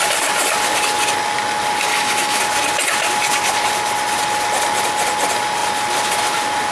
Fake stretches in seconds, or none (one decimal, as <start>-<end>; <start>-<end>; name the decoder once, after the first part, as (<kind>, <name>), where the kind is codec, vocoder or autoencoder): 1.9-2.4 (autoencoder, DAC-VAE)